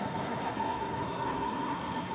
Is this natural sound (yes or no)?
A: no